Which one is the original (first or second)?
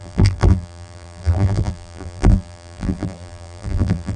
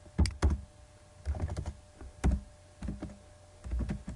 second